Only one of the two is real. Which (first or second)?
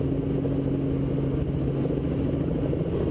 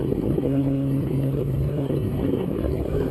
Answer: first